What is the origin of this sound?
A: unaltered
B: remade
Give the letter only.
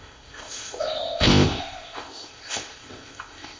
B